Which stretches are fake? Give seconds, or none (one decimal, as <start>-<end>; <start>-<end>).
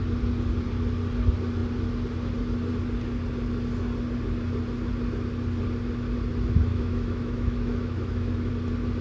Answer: 6.7-8.5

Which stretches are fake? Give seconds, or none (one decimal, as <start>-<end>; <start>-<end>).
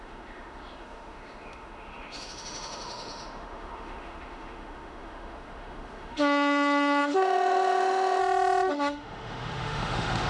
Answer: 0.0-8.2; 8.7-10.3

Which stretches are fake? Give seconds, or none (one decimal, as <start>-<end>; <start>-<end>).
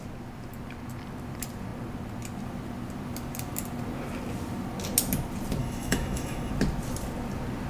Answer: 5.6-6.5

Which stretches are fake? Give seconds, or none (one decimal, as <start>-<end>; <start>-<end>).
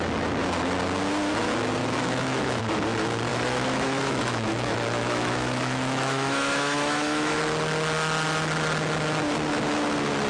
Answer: 1.8-2.6; 3.3-7.4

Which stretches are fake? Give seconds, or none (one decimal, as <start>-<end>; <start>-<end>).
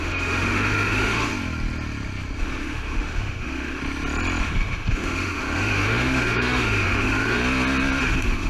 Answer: 0.0-1.3; 2.4-3.8; 4.4-7.4; 8.0-8.5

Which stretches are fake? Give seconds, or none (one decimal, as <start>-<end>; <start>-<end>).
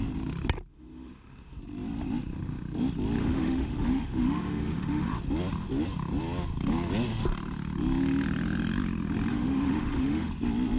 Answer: 0.7-1.6; 3.2-5.2; 9.3-10.3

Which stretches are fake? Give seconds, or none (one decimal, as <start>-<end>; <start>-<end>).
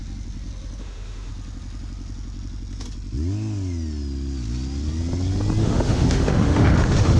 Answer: 0.8-1.3; 5.6-7.2